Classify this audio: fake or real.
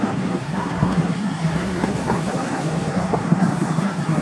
fake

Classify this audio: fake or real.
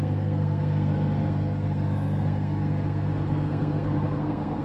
fake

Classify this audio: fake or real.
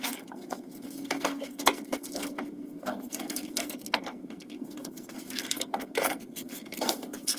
fake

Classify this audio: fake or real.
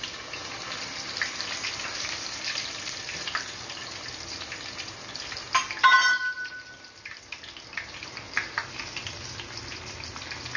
real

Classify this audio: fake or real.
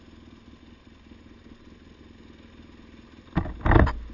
real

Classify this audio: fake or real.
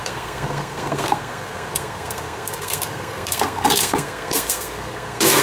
fake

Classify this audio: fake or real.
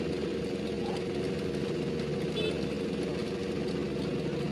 real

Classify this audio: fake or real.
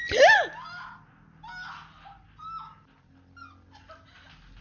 real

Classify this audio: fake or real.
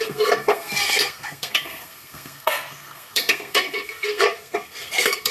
fake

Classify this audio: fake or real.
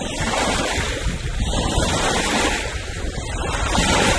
real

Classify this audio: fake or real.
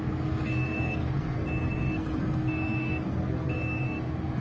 fake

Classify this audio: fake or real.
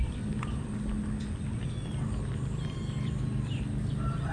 real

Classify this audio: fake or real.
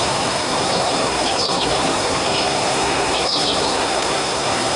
fake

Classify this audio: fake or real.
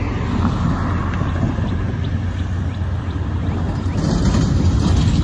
real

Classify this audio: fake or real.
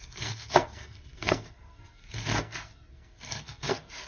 fake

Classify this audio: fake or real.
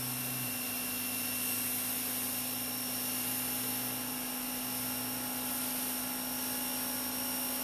real